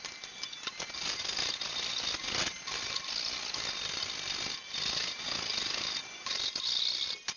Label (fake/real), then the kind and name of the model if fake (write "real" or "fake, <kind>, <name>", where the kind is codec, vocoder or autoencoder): real